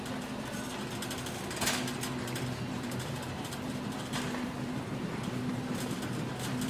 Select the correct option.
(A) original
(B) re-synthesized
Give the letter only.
B